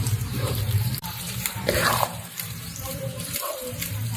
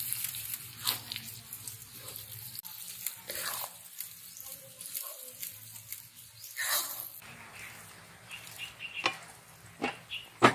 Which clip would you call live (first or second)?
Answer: second